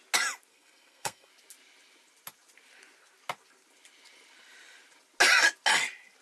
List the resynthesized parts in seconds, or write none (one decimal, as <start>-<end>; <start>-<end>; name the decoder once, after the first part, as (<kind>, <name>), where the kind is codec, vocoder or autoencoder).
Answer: 0.5-1.3 (codec, SNAC)